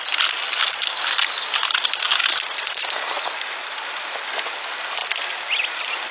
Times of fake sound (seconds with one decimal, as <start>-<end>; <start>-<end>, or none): none

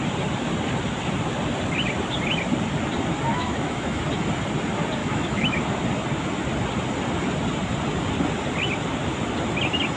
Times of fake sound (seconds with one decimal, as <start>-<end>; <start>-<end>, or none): 3.3-4.0; 5.0-5.6

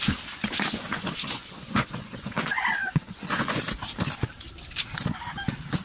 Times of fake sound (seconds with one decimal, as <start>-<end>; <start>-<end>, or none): 0.7-3.6

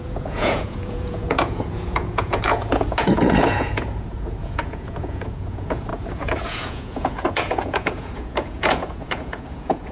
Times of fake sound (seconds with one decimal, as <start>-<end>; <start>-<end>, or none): 0.0-9.9

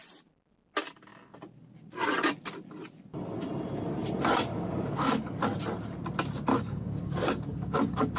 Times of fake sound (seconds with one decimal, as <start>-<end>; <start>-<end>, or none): 4.5-5.4; 6.5-8.2

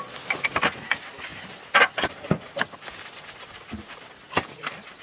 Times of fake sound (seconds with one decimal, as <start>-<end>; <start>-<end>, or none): none